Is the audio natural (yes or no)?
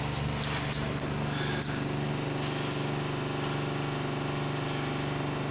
yes